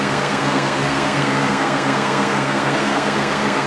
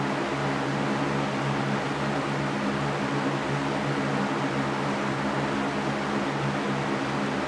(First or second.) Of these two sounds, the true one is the second